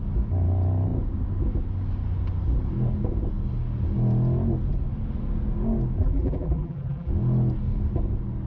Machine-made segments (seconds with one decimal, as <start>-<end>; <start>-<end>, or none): 6.0-7.1